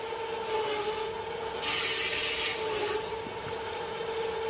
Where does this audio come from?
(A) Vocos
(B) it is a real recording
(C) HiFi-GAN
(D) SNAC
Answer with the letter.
B